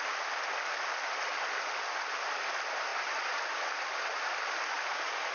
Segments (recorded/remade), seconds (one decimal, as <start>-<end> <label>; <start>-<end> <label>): 0.0-5.3 recorded